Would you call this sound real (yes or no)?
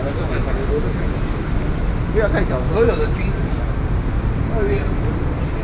yes